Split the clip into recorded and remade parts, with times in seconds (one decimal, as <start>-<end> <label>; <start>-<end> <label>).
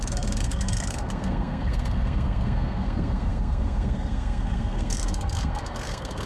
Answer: 0.0-6.3 remade